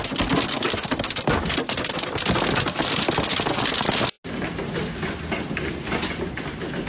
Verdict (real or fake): real